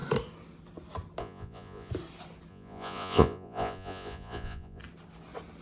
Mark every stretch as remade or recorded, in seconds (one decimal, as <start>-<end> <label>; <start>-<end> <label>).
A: 0.0-1.2 recorded; 1.2-1.9 remade; 1.9-2.5 recorded; 2.5-4.8 remade; 4.8-5.6 recorded